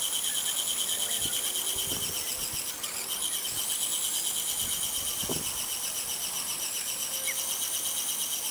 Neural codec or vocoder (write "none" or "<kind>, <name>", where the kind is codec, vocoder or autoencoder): none